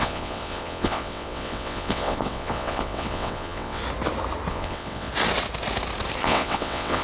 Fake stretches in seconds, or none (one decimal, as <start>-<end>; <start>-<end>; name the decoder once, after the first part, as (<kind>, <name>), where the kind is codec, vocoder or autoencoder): 0.0-3.8 (vocoder, WaveNeXt); 4.5-5.1; 6.2-7.0